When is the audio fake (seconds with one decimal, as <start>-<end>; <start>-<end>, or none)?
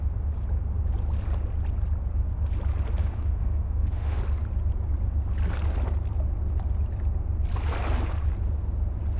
3.0-4.2